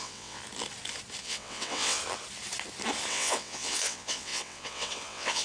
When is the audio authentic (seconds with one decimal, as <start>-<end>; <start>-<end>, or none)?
0.4-1.2; 2.0-3.1